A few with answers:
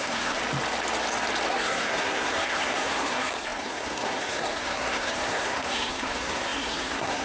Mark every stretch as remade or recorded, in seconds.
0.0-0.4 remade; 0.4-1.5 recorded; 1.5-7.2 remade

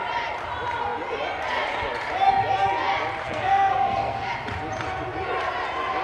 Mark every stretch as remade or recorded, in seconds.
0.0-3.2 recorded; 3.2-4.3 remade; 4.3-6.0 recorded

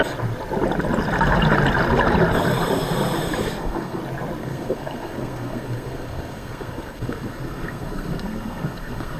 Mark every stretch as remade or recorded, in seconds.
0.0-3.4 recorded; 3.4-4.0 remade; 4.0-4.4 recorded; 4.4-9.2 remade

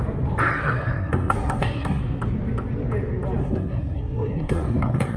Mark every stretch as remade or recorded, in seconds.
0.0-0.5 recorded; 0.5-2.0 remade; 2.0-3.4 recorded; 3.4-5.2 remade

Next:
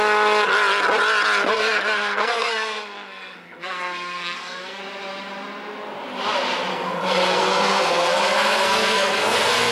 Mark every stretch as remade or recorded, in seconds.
0.0-1.4 recorded; 1.4-4.8 remade; 4.8-6.7 recorded; 6.7-9.7 remade